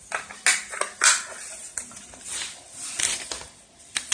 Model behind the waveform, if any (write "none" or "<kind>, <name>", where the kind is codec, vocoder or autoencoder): none